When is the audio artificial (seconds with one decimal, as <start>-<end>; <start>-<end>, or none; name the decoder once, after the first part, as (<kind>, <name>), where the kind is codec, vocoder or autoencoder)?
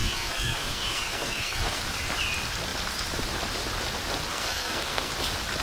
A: 0.0-1.8 (codec, SNAC); 4.3-5.1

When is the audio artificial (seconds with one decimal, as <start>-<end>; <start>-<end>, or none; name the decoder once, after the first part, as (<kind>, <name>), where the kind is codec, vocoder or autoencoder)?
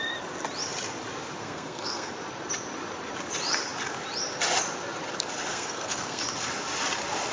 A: 1.4-2.1 (codec, SNAC); 5.5-6.2